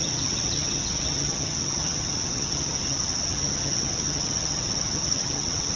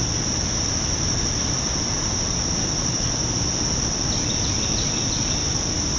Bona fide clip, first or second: second